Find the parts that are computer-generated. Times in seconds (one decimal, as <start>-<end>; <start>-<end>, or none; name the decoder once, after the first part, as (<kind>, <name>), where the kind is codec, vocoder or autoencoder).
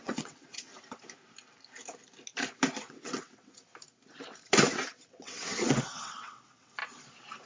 0.0-0.7 (vocoder, WaveNeXt); 2.8-3.7; 4.7-6.8